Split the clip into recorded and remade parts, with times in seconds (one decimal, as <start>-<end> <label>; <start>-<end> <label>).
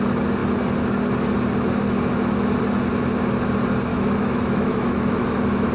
0.0-3.9 recorded; 3.9-5.7 remade